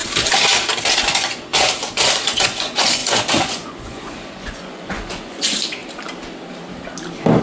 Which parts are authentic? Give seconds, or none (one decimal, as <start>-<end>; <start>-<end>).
0.0-1.0; 5.8-7.4